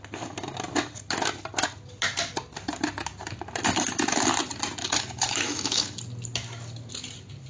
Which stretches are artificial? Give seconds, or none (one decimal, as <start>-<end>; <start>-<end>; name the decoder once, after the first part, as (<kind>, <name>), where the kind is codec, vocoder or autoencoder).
4.8-6.0 (autoencoder, DAC-VAE)